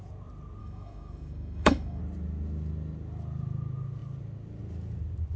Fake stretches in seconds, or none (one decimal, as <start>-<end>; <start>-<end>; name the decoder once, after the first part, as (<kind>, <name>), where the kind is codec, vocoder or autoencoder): 0.6-2.0 (autoencoder, DAC-VAE)